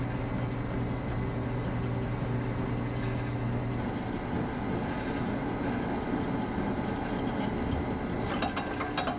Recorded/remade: recorded